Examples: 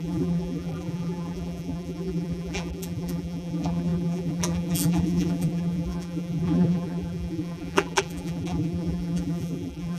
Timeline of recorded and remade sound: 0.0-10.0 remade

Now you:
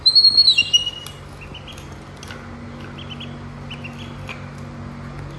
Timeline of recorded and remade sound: 0.0-5.4 recorded

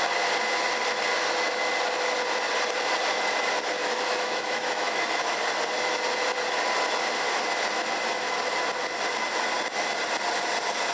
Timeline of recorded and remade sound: 0.0-3.8 recorded; 3.8-5.4 remade; 5.4-10.9 recorded

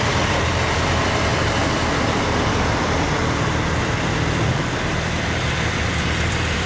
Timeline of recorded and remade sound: 0.0-1.3 remade; 1.3-2.0 recorded; 2.0-3.2 remade; 3.2-3.8 recorded; 3.8-6.7 remade

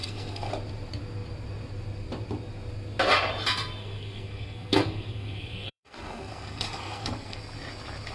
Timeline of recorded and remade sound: 0.0-0.5 remade; 0.5-3.8 recorded; 3.8-7.4 remade; 7.4-8.1 recorded